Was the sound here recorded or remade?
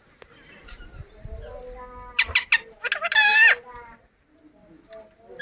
recorded